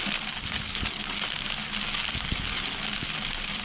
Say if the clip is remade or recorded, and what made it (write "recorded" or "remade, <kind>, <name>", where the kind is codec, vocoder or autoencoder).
recorded